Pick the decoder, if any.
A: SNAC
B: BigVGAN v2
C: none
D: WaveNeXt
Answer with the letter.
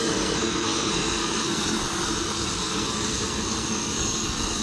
A